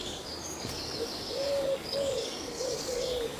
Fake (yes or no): yes